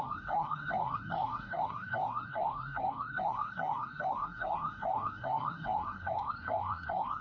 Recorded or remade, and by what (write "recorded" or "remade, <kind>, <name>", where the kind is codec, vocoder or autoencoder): remade, codec, SNAC